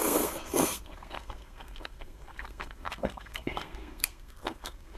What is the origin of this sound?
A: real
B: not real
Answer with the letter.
B